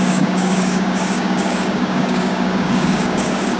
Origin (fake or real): fake